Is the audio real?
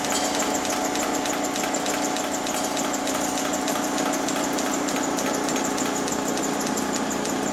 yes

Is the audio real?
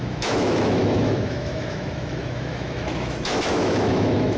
no